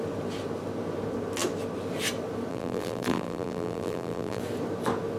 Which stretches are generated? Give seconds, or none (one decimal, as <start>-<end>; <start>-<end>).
2.5-4.4